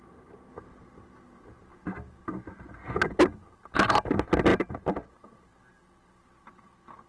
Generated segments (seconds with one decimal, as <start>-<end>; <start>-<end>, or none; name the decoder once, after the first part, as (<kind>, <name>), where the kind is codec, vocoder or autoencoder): none

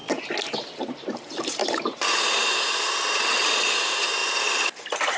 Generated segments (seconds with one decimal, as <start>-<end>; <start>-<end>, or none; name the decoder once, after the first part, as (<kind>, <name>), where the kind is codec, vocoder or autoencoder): none

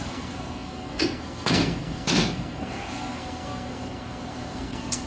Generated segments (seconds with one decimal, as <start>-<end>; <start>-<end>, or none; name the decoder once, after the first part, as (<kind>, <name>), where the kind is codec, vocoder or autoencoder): 0.0-5.1 (codec, SNAC)

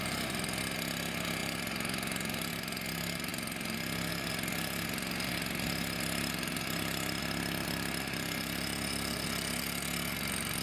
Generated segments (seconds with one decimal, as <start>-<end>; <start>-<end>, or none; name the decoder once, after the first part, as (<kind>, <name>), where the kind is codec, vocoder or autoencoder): none

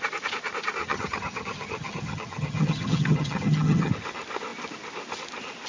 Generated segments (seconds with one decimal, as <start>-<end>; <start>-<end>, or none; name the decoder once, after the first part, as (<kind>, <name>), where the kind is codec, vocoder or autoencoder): 0.8-3.9 (vocoder, HiFi-GAN)

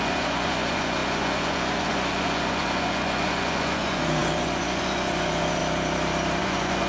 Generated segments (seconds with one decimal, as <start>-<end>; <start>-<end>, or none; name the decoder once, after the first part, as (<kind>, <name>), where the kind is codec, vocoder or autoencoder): 0.0-5.6 (vocoder, Vocos); 6.4-6.9

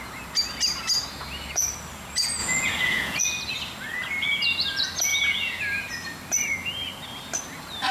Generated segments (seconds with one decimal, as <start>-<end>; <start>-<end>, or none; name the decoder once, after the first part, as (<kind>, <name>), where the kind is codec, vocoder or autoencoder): 2.4-3.2 (vocoder, Vocos); 5.1-5.6